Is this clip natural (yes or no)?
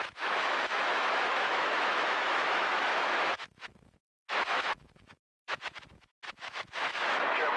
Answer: no